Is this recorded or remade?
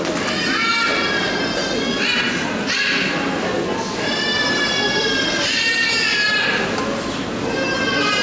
recorded